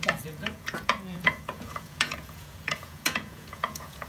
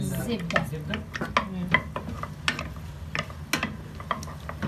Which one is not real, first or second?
first